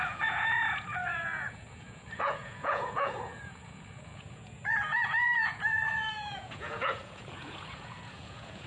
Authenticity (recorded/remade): remade